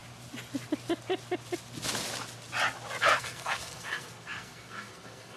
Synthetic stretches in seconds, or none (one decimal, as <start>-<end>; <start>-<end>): 3.0-5.4